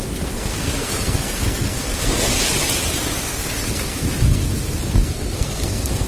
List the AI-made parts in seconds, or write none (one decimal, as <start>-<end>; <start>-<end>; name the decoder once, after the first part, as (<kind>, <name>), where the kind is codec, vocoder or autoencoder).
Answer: 0.0-2.3 (codec, SNAC); 3.2-6.1